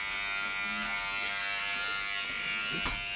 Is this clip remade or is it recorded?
recorded